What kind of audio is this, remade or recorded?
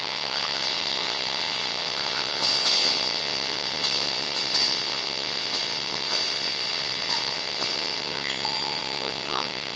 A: remade